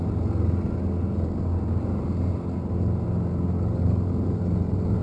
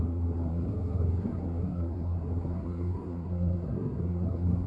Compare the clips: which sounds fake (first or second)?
second